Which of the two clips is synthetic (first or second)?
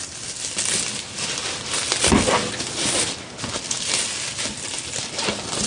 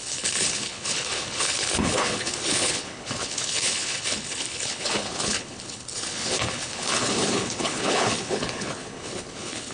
second